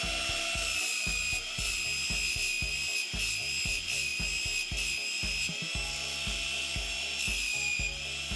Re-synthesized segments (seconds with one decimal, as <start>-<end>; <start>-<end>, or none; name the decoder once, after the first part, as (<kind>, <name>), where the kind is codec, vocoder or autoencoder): none